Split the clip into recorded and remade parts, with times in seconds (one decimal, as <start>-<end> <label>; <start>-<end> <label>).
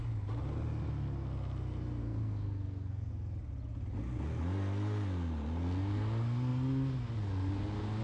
0.0-2.0 recorded; 2.0-3.1 remade; 3.1-8.0 recorded